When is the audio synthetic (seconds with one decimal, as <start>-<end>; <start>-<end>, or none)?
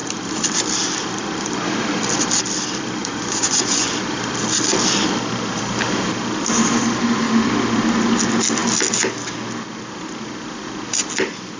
3.0-3.9